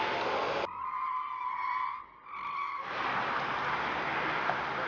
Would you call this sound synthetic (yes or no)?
no